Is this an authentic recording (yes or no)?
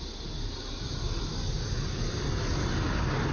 yes